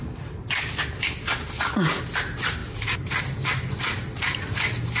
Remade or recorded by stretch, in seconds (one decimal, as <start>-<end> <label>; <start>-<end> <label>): 0.0-5.0 recorded